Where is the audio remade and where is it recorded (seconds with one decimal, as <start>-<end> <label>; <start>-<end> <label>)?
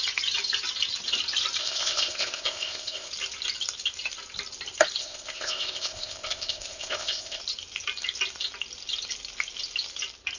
0.0-1.6 recorded; 1.6-3.1 remade; 3.1-5.0 recorded; 5.0-7.4 remade; 7.4-10.4 recorded